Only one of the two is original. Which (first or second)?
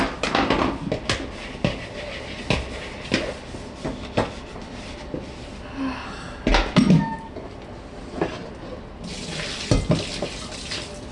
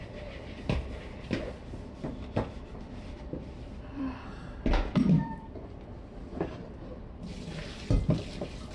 first